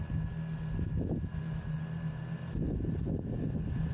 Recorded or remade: recorded